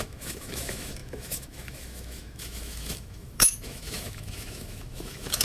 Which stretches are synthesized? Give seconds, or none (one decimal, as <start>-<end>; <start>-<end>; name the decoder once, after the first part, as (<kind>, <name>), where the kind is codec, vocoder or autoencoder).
0.0-5.4 (autoencoder, DAC-VAE)